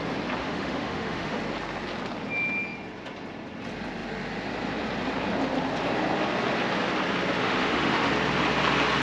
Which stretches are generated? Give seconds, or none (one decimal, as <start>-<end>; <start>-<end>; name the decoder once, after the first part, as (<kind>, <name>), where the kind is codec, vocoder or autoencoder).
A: 0.4-1.4 (autoencoder, DAC-VAE); 7.4-8.1